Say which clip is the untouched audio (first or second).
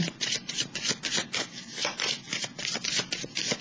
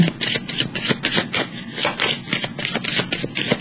second